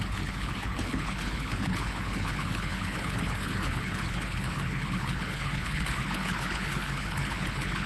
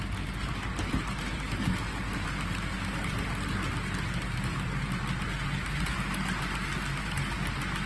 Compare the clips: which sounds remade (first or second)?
first